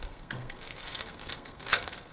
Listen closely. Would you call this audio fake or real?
fake